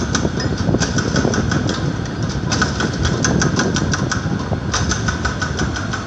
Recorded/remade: recorded